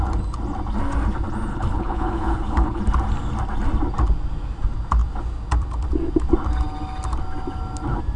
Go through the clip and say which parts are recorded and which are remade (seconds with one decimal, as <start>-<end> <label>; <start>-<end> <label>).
0.0-1.5 recorded; 1.5-2.8 remade; 2.8-8.2 recorded